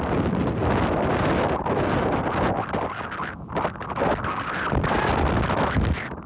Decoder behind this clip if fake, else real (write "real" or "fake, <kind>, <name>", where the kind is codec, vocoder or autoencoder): real